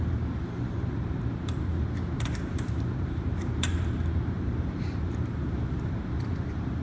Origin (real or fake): fake